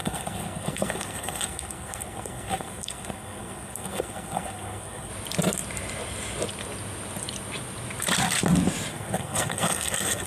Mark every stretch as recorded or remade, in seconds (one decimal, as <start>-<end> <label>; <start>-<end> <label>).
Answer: 0.0-5.1 remade; 5.1-8.9 recorded; 8.9-10.3 remade

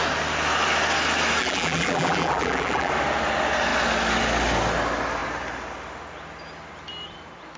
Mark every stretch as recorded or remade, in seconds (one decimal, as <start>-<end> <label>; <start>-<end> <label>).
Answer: 0.0-1.4 recorded; 1.4-2.9 remade; 2.9-7.6 recorded

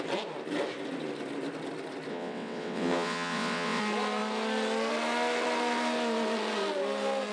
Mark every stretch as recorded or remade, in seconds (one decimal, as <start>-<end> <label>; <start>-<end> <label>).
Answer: 0.0-2.1 recorded; 2.1-3.8 remade; 3.8-7.3 recorded

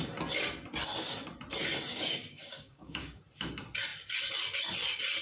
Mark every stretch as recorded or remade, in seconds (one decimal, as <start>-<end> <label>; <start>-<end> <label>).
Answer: 0.0-1.9 recorded; 1.9-3.2 remade; 3.2-5.2 recorded

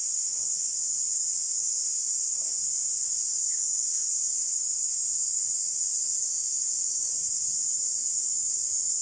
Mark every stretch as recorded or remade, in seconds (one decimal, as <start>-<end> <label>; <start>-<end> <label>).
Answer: 0.0-9.0 remade

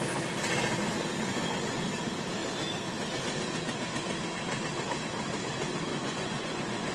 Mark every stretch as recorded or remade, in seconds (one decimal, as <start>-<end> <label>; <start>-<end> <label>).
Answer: 0.0-1.3 recorded; 1.3-1.9 remade; 1.9-5.9 recorded; 5.9-6.9 remade

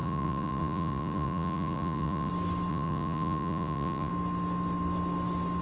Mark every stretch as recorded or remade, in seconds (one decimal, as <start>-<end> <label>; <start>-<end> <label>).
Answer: 0.0-2.3 remade; 2.3-2.7 recorded; 2.7-4.1 remade; 4.1-5.6 recorded